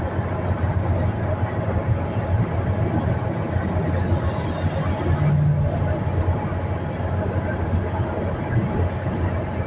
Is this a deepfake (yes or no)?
no